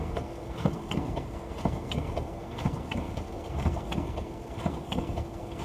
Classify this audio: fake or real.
fake